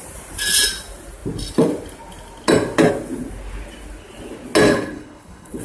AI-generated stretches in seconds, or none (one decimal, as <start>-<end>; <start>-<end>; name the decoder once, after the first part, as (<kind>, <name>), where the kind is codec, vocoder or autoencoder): 4.7-5.6 (codec, HILCodec)